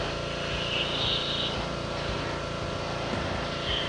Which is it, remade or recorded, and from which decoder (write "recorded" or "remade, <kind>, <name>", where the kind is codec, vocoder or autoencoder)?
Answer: recorded